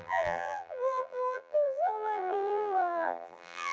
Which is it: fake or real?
fake